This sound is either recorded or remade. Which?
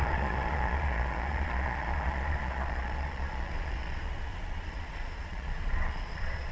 remade